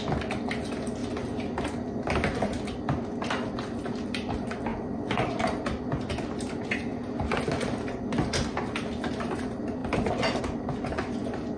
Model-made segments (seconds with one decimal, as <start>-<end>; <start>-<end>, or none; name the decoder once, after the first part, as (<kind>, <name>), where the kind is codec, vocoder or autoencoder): 1.0-2.1 (vocoder, BigVGAN v2); 4.7-5.4